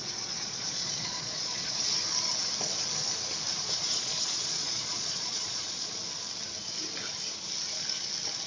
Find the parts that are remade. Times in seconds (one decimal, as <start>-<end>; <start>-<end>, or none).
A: 0.0-1.8; 3.5-5.9